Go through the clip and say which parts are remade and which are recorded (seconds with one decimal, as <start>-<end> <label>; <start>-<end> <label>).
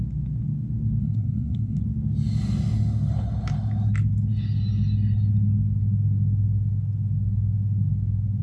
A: 0.0-1.0 recorded; 1.0-1.8 remade; 1.8-8.4 recorded